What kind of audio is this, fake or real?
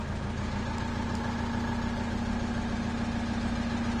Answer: real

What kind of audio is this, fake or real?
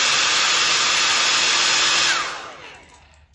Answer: real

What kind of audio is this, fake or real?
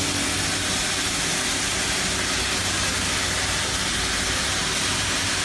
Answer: real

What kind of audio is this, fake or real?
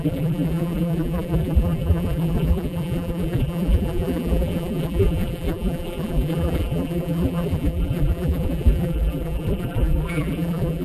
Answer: fake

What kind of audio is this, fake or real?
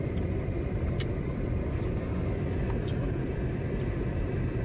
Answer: real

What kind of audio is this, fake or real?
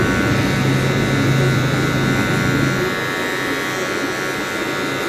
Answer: real